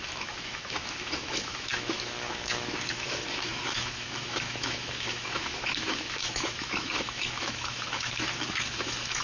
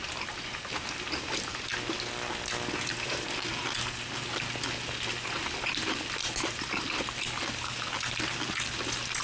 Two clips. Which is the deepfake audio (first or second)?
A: first